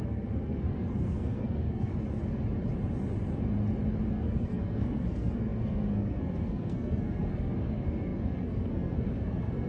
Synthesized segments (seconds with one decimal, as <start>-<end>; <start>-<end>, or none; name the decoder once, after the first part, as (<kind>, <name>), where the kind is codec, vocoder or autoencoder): 0.0-1.9 (codec, SNAC); 4.1-9.7